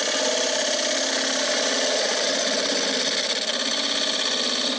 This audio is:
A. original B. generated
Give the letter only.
A